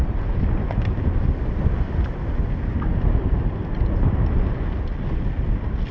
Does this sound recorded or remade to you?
recorded